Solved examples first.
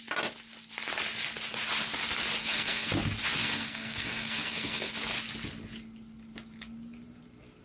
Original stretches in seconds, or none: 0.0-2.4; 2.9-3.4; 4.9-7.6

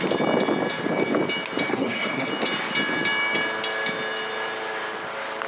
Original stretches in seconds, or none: 0.0-1.7; 2.3-5.5

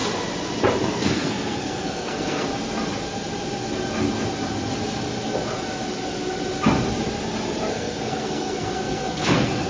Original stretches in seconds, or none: 0.0-0.8; 2.5-7.7

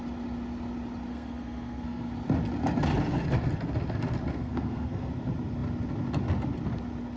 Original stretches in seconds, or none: 0.0-1.1; 2.1-4.3; 5.1-7.2

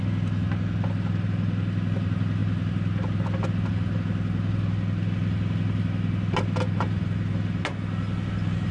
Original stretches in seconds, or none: 0.0-8.7

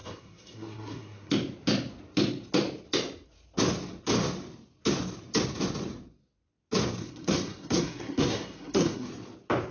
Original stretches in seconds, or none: 1.3-7.0; 9.1-9.7

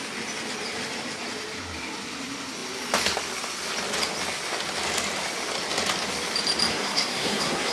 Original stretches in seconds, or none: 0.0-6.7

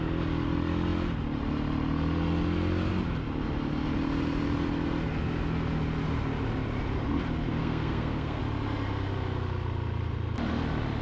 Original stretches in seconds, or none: 0.0-7.6; 8.4-11.0